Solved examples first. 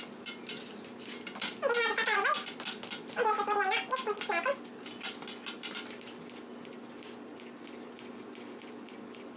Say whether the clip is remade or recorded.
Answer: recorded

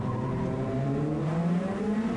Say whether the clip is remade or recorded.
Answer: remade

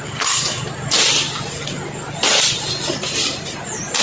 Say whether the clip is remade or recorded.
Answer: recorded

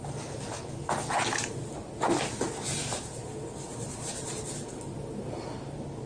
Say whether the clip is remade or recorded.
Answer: recorded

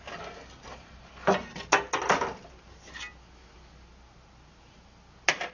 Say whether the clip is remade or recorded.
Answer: recorded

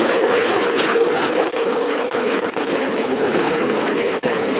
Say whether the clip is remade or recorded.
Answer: remade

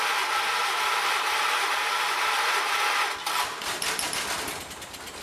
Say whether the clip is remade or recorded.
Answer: recorded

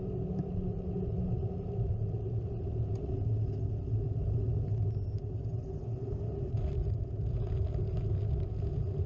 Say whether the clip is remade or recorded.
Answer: recorded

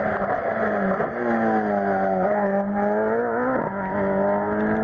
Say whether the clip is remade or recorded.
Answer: recorded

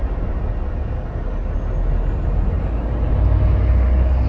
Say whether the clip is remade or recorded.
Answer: recorded